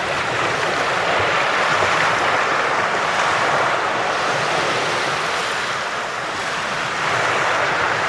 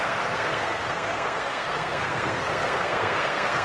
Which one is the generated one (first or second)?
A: second